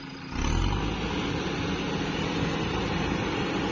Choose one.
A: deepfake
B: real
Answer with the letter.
B